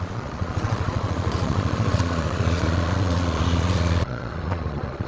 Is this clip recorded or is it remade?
remade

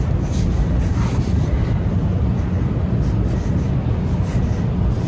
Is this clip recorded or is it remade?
recorded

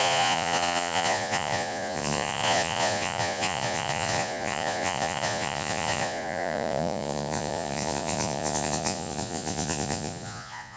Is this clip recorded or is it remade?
remade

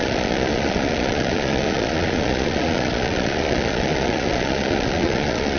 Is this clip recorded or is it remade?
remade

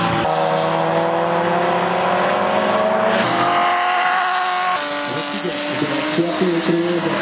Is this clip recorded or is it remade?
recorded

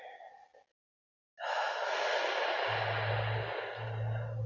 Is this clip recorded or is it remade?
recorded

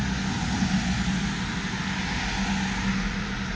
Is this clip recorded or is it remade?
recorded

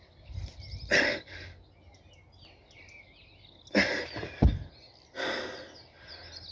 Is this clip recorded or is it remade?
recorded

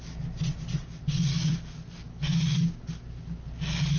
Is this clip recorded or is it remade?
recorded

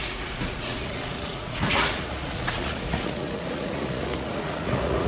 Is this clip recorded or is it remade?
remade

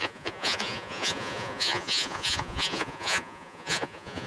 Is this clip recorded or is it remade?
remade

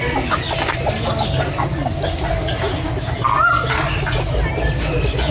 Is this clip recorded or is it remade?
recorded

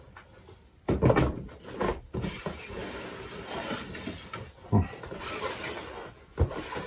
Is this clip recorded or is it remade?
recorded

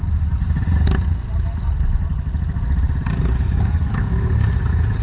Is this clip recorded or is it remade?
recorded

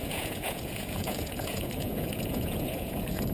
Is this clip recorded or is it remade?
remade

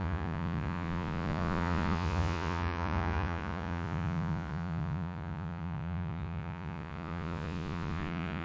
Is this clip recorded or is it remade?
remade